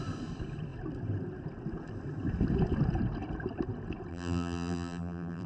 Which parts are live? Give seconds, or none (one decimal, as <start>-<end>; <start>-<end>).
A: 0.0-4.1